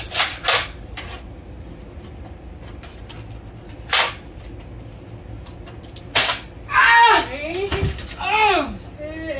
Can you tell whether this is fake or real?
real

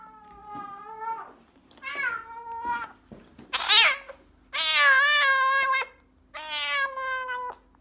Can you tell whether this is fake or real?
real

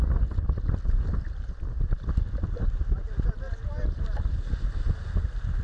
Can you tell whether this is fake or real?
real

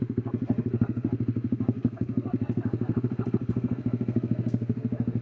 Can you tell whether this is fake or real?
fake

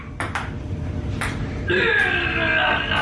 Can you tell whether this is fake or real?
real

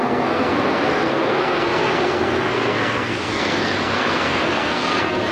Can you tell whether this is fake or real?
fake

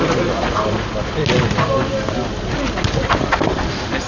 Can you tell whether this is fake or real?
real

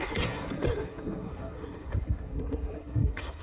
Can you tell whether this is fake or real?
fake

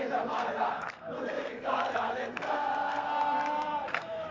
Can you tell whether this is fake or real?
fake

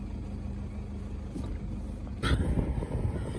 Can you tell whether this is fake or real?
real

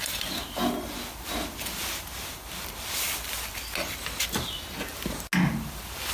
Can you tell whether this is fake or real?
real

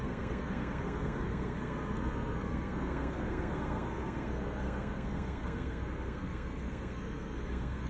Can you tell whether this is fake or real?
fake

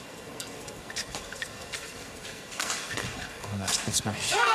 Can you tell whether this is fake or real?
fake